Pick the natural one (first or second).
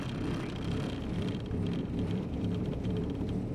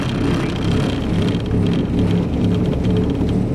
second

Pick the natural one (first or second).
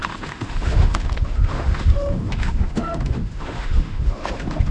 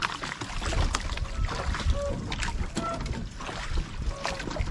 second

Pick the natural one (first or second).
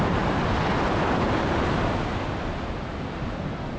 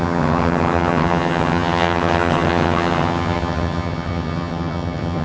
first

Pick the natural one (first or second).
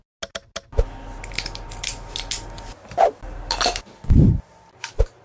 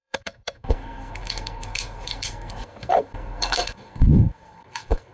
first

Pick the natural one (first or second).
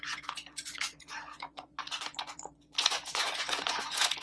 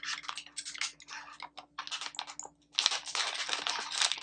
second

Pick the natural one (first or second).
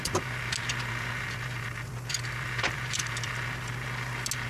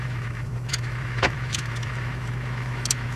first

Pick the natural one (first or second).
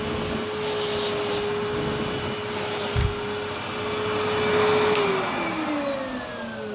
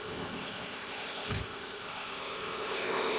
first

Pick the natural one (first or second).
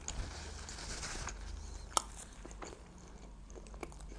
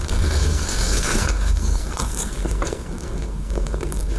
first